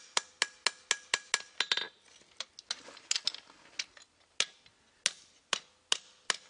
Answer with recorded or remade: recorded